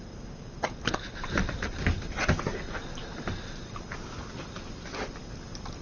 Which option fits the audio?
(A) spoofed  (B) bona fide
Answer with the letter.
B